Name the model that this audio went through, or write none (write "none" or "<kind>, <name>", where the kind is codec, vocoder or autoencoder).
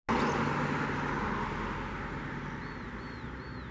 none